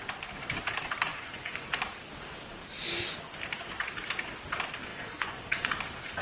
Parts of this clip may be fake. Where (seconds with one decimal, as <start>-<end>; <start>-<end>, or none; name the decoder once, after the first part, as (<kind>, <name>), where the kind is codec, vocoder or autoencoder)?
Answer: 1.1-1.8 (vocoder, Vocos); 4.9-5.7